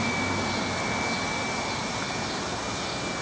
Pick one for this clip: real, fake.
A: real